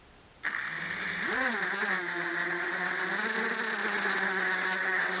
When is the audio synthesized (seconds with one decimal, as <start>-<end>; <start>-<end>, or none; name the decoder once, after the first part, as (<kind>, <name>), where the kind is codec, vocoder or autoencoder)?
2.4-3.0 (vocoder, WaveNeXt); 3.8-5.2